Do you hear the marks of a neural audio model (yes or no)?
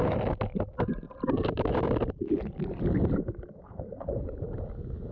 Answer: no